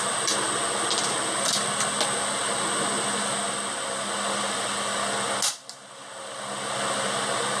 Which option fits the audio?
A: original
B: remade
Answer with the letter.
A